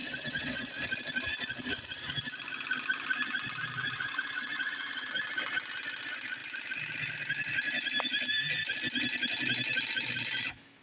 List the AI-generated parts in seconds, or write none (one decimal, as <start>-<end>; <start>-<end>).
0.0-0.7; 3.8-5.1